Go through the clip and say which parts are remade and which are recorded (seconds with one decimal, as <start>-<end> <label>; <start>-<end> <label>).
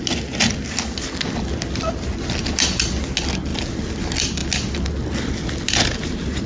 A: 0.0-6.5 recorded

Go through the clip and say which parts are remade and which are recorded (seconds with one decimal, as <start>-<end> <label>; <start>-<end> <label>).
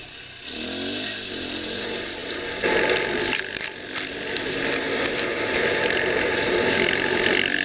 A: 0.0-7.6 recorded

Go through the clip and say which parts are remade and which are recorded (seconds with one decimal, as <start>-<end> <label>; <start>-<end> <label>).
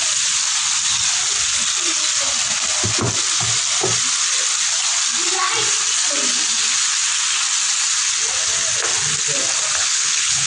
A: 0.0-9.8 recorded; 9.8-10.5 remade